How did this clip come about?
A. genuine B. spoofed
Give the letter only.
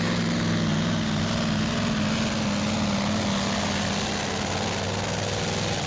A